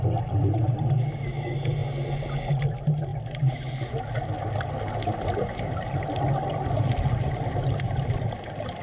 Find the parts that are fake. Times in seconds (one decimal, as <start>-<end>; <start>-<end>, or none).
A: none